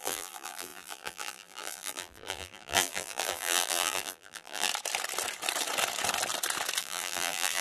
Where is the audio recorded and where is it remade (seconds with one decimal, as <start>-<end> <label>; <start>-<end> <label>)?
0.0-4.7 remade; 4.7-6.8 recorded; 6.8-7.6 remade